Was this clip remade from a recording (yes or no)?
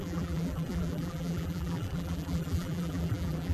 yes